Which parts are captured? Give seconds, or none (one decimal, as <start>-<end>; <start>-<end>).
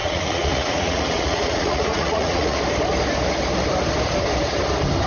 2.6-5.1